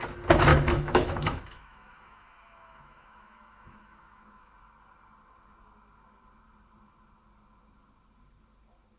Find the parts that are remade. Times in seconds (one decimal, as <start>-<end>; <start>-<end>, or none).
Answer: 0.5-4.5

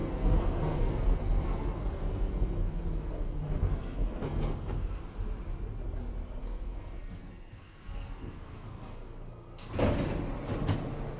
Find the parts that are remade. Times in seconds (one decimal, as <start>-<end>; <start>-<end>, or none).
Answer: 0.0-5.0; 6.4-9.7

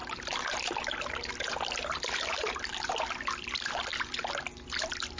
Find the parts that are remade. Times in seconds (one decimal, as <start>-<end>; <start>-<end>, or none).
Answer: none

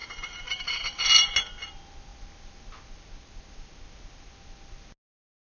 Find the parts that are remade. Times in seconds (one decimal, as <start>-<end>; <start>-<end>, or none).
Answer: none

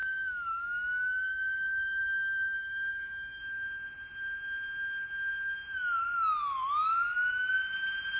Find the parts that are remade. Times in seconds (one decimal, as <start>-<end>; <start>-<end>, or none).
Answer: 0.0-3.4

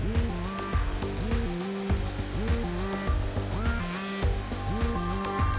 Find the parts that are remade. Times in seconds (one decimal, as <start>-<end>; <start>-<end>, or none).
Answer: none